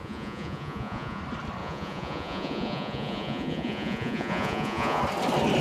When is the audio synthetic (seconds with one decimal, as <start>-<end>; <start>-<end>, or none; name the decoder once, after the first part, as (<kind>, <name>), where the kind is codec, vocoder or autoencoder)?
0.0-1.2 (vocoder, Vocos); 1.6-5.0